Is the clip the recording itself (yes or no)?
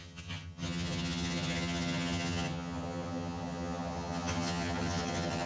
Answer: no